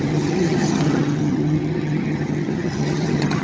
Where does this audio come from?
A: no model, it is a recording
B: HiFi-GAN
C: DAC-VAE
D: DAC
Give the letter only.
B